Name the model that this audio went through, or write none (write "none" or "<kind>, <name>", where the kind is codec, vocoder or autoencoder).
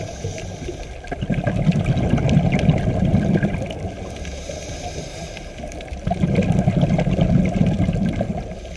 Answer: none